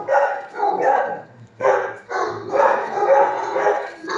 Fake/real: fake